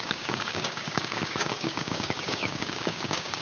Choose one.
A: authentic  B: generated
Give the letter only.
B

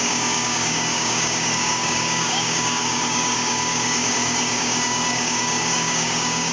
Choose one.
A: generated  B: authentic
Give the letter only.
A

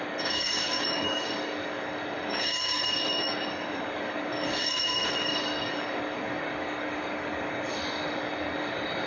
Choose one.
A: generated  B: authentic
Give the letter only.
A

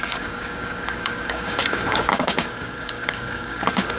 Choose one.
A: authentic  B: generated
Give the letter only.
B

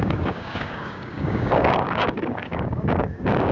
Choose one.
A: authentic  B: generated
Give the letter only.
B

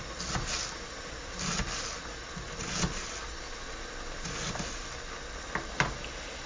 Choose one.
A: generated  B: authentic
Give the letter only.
B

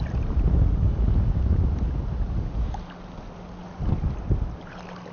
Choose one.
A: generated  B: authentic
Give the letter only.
B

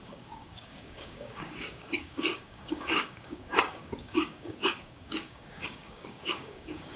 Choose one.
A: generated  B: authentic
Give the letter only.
A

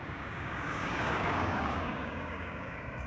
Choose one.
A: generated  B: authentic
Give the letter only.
A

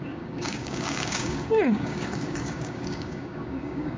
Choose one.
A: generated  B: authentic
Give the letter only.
A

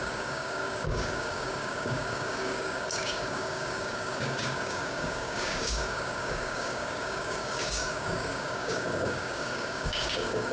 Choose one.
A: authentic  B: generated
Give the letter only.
B